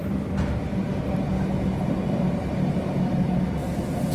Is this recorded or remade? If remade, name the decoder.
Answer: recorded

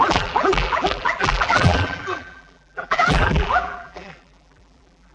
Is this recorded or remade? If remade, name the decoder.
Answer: remade, vocoder, BigVGAN v2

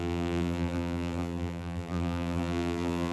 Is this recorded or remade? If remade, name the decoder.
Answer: remade, vocoder, BigVGAN v2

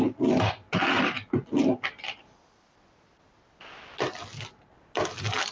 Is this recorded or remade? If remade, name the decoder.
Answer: recorded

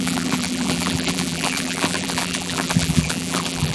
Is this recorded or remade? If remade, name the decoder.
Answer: remade, vocoder, BigVGAN v2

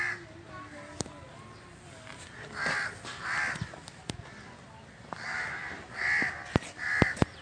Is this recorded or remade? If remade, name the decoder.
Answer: remade, vocoder, BigVGAN v2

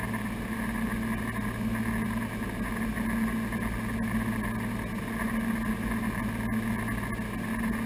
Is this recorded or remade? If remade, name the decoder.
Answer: recorded